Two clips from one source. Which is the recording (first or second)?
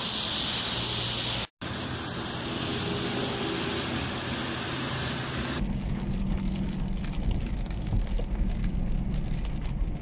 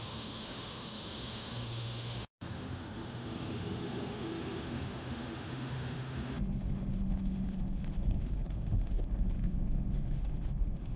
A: first